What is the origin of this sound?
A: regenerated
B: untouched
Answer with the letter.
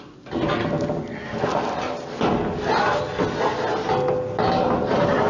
B